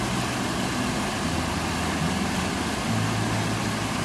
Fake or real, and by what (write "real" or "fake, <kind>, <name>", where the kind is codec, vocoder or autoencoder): real